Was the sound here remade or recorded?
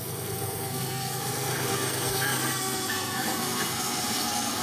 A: remade